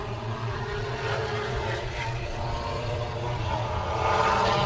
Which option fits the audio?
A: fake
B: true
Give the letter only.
A